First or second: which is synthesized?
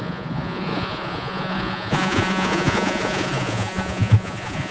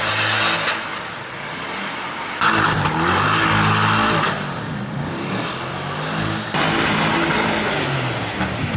first